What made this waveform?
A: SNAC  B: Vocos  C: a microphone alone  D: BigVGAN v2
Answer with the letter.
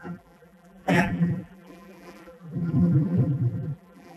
D